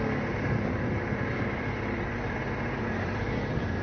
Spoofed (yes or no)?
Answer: yes